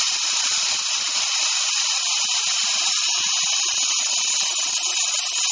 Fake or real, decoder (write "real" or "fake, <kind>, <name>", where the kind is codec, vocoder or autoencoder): real